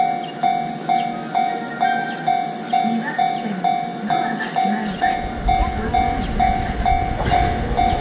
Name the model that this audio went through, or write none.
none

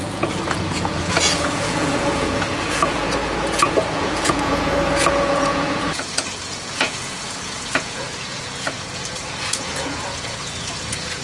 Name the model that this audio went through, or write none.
vocoder, Vocos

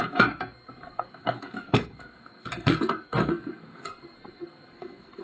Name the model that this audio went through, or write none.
codec, SNAC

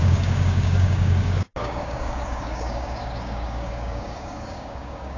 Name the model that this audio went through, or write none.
codec, DAC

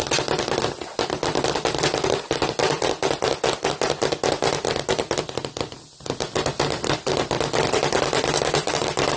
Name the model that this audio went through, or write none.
none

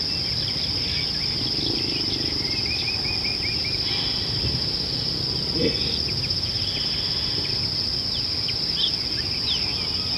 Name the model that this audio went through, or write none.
none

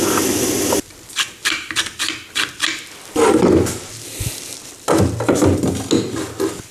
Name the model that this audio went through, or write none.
none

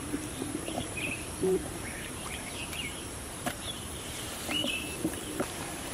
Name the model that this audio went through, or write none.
vocoder, BigVGAN v2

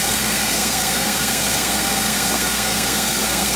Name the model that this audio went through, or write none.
codec, SNAC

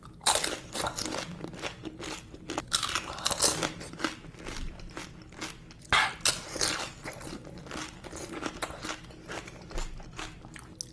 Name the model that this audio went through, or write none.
none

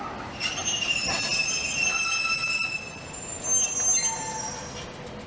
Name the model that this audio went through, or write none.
none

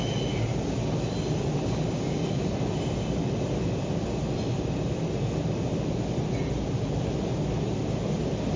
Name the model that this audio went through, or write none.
none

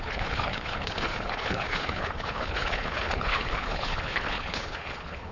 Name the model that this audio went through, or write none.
codec, HILCodec